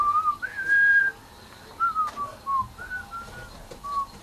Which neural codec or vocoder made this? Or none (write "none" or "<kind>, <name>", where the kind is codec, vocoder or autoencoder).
none